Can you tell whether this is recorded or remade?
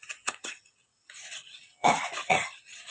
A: remade